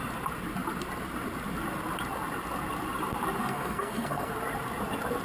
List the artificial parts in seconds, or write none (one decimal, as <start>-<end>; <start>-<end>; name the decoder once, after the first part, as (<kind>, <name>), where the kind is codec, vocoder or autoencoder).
3.4-4.3 (codec, SNAC)